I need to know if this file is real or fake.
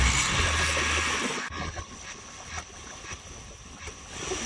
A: real